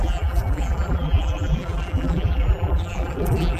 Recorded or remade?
remade